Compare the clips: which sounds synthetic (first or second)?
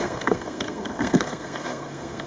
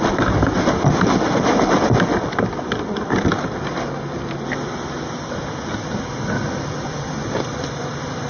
first